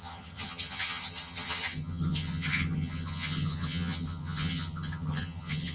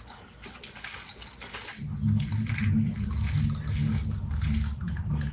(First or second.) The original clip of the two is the second